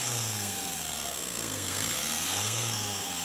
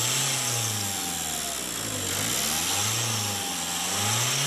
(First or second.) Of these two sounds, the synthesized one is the first